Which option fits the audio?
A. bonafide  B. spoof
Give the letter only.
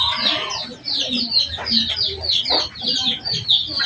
A